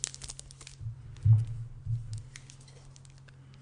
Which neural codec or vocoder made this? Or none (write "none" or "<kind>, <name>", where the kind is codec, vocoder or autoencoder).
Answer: none